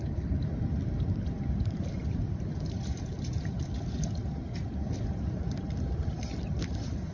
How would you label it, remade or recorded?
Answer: remade